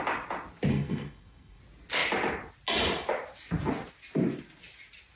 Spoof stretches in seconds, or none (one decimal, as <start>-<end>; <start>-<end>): 0.7-1.6